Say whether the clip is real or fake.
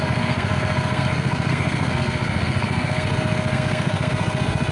fake